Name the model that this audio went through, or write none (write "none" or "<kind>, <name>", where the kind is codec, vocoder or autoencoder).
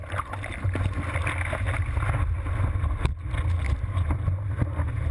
none